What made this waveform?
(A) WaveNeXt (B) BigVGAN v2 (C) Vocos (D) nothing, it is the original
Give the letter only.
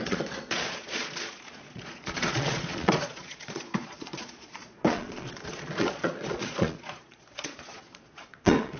C